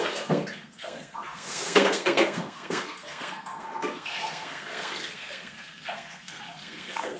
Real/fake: fake